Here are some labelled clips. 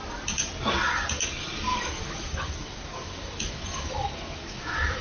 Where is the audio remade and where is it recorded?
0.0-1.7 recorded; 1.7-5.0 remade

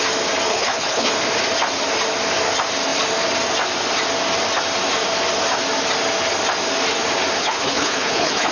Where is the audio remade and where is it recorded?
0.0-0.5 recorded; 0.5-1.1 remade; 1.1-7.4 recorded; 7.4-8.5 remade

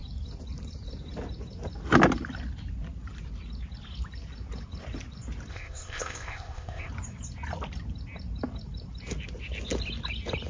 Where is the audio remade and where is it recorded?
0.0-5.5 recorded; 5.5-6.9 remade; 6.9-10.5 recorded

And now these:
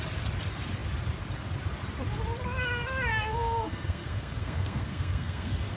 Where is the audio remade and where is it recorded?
0.0-3.1 recorded; 3.1-5.8 remade

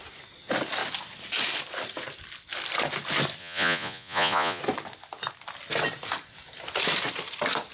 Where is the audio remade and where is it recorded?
0.0-3.4 recorded; 3.4-4.6 remade; 4.6-7.7 recorded